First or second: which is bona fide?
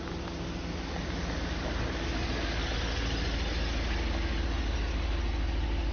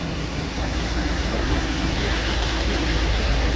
first